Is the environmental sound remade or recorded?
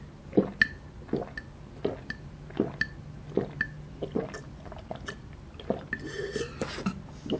recorded